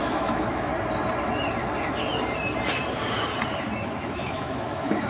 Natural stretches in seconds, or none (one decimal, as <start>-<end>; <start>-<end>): 0.7-3.8